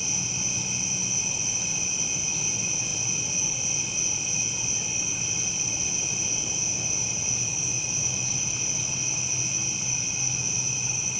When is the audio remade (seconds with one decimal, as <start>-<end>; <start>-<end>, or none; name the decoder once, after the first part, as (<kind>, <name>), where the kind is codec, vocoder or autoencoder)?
none